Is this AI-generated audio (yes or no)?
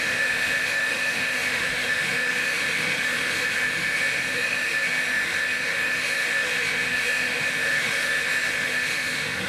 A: yes